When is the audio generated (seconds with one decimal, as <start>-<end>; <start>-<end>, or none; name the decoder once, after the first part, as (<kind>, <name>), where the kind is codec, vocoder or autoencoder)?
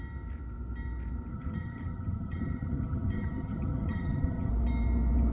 1.3-4.5 (vocoder, HiFi-GAN)